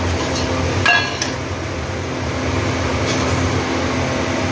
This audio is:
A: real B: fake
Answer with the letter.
A